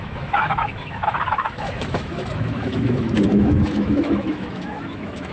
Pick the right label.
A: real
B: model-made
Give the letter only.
B